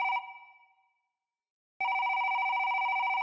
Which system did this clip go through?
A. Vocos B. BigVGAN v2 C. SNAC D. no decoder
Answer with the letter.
D